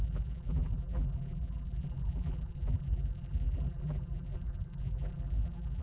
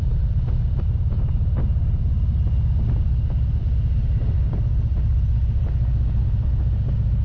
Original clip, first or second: second